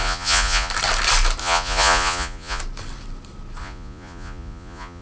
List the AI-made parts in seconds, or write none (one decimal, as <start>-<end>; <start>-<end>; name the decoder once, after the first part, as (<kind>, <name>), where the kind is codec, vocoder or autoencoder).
0.0-0.7 (vocoder, Vocos); 1.4-2.6; 3.6-5.0